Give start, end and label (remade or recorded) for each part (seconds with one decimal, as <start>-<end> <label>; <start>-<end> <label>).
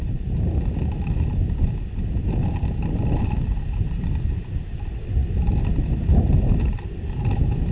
0.0-7.7 recorded